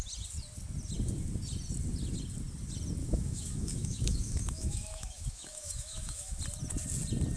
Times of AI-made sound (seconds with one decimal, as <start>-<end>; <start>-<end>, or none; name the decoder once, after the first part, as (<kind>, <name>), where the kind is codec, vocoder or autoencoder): 3.0-6.4 (autoencoder, DAC-VAE)